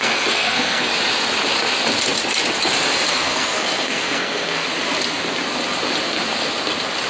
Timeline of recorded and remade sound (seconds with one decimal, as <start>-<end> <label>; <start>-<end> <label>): 0.0-0.9 remade; 0.9-3.1 recorded; 3.1-4.7 remade; 4.7-7.1 recorded